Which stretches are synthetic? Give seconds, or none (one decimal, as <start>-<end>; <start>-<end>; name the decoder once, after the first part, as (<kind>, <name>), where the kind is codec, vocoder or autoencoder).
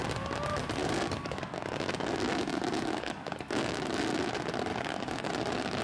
0.8-3.8 (codec, DAC); 4.7-5.3